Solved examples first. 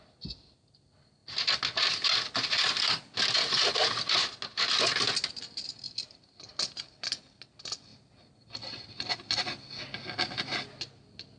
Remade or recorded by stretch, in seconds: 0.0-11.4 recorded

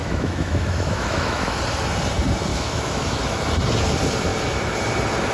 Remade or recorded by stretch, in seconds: 0.0-1.6 remade; 1.6-2.5 recorded; 2.5-3.4 remade; 3.4-5.3 recorded